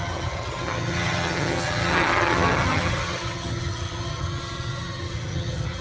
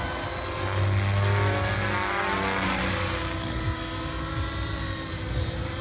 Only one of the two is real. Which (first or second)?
second